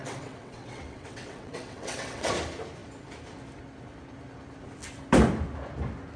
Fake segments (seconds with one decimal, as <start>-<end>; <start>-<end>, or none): 0.0-2.3